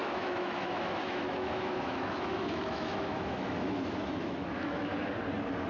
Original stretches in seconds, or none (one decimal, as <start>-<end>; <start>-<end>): 4.9-5.7